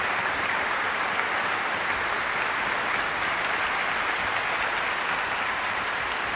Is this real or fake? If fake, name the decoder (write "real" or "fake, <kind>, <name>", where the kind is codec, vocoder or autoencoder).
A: real